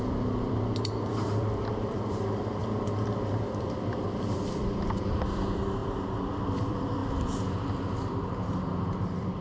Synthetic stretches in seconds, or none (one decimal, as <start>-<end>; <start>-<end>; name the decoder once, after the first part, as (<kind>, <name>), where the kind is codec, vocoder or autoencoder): 0.0-9.4 (vocoder, BigVGAN v2)